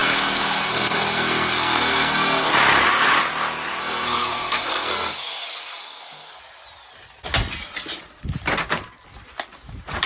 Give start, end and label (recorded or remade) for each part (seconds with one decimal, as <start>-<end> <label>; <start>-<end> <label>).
0.0-2.5 remade; 2.5-3.8 recorded; 3.8-6.4 remade; 6.4-10.1 recorded